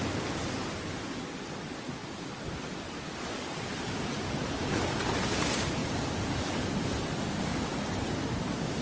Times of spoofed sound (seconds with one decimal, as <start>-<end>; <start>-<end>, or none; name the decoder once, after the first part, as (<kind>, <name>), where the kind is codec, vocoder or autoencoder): none